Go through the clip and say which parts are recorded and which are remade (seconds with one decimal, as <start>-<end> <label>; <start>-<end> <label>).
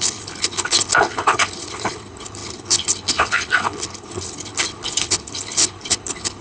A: 0.0-6.4 remade